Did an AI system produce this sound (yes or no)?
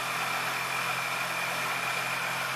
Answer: no